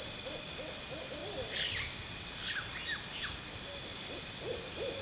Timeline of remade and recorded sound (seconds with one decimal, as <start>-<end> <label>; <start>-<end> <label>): 0.0-5.0 recorded

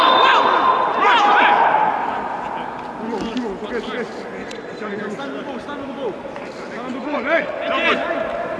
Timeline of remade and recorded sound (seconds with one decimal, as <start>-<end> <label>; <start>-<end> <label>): 0.0-4.4 recorded; 4.4-5.0 remade; 5.0-7.0 recorded; 7.0-7.6 remade; 7.6-8.6 recorded

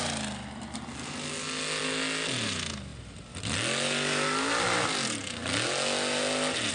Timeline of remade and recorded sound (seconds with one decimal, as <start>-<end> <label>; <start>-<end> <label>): 0.0-6.7 recorded

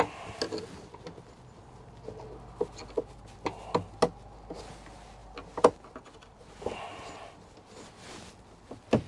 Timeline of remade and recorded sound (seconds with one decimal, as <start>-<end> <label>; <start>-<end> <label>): 0.0-9.1 recorded

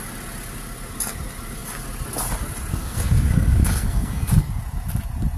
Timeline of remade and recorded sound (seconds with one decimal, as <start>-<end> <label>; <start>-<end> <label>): 0.0-2.7 recorded; 2.7-4.5 remade; 4.5-5.4 recorded

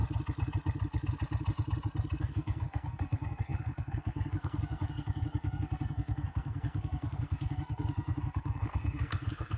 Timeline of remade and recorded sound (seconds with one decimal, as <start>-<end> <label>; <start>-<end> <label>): 0.0-2.2 recorded; 2.2-9.6 remade